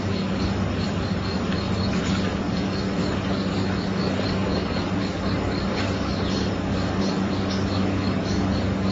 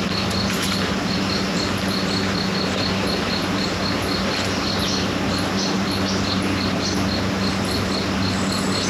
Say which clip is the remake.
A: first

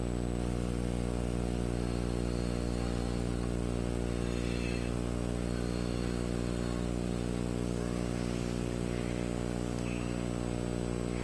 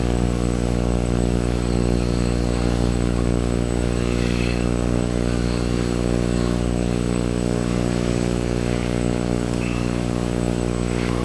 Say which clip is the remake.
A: second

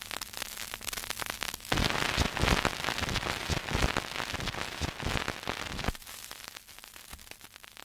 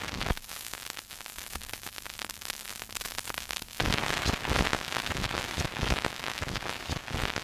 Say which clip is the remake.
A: second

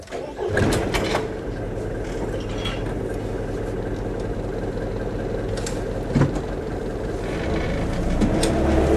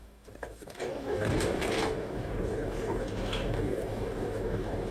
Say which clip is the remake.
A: second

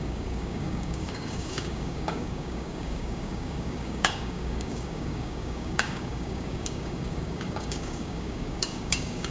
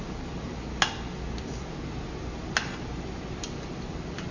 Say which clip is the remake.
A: first